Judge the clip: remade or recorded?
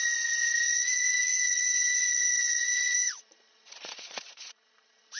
remade